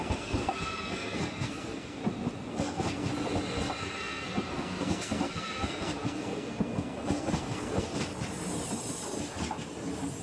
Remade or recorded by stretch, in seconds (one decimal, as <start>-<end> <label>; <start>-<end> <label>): 0.0-2.0 remade; 2.0-2.5 recorded; 2.5-3.1 remade; 3.1-3.8 recorded; 3.8-8.1 remade; 8.1-10.2 recorded